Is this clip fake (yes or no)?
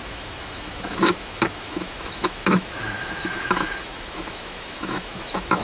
yes